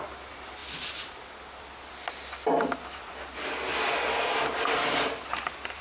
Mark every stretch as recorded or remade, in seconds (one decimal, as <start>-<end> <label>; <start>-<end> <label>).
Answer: 0.0-5.8 recorded